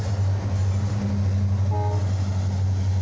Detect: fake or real real